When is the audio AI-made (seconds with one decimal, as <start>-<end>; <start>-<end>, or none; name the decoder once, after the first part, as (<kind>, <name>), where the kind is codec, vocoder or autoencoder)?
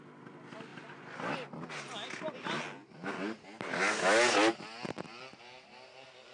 none